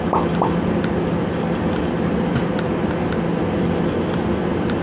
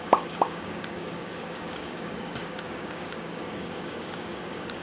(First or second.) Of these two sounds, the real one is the first